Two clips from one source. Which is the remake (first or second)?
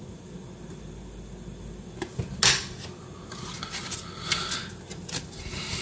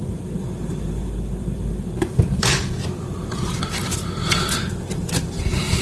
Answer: second